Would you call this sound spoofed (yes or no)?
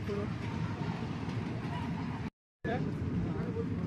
yes